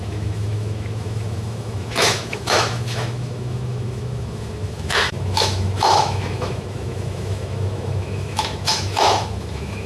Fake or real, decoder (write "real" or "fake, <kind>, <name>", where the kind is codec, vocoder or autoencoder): fake, autoencoder, DAC-VAE